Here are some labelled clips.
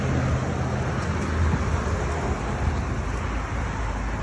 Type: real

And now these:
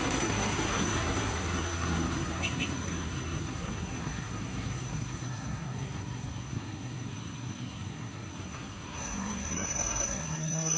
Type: fake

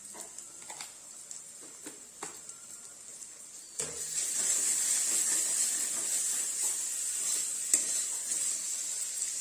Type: real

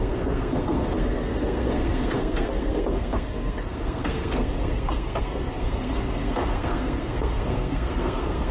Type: fake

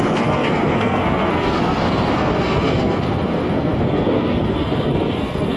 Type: fake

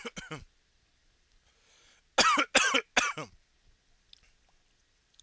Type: real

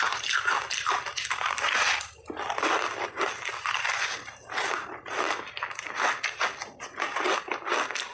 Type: real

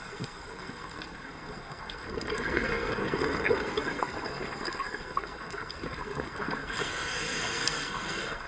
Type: fake